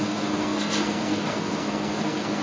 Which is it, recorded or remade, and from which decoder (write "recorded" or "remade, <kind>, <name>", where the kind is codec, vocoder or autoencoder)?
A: remade, codec, SNAC